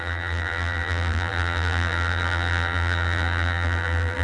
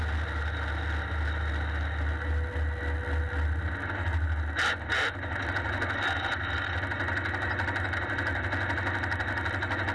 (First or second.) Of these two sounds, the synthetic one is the first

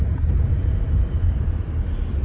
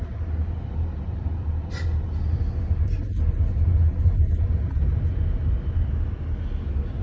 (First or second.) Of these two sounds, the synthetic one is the first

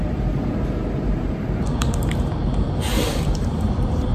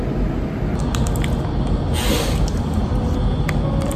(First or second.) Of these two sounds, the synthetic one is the first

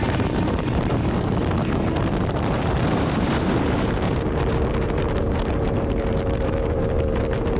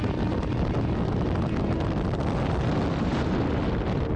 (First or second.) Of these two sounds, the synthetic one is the first